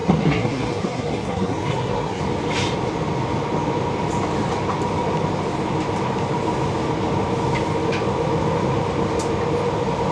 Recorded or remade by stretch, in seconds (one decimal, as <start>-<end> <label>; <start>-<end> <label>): 0.0-2.2 remade; 2.2-10.1 recorded